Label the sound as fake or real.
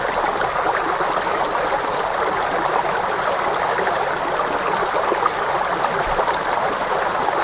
real